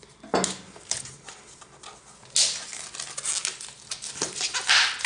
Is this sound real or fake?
real